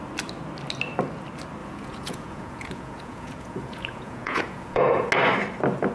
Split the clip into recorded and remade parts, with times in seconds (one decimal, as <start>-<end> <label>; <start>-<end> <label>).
0.0-1.6 recorded; 1.6-5.1 remade; 5.1-5.9 recorded